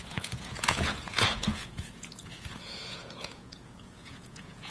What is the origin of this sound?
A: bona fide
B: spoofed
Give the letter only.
B